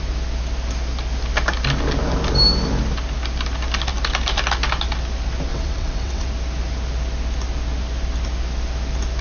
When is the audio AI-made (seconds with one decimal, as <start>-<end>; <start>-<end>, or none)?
5.5-6.3